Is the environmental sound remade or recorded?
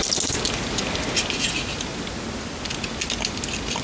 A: recorded